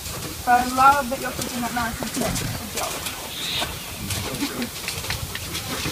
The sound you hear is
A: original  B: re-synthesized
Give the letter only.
B